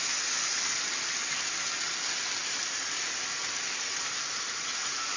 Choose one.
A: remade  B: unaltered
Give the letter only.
B